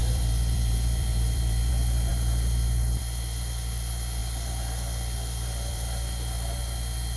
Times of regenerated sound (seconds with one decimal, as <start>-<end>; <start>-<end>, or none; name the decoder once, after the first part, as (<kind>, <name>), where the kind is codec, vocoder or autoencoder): 0.0-1.7 (vocoder, BigVGAN v2); 4.2-6.6